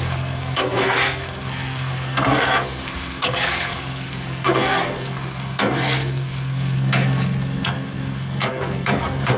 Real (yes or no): no